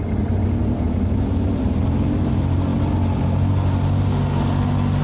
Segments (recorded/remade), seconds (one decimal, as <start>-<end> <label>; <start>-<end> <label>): 0.0-5.0 recorded